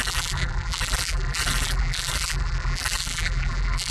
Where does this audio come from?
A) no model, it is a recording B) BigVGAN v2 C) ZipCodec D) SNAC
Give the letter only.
B